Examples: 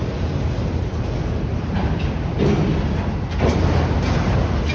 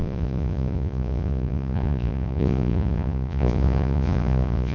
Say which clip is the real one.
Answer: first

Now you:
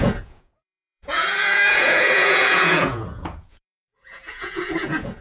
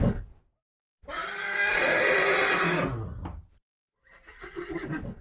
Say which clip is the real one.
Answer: second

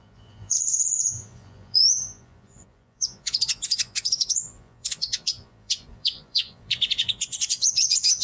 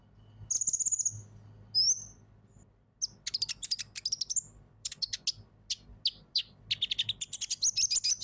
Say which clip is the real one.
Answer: second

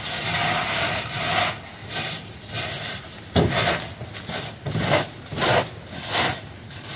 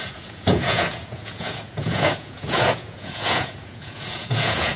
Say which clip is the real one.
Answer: first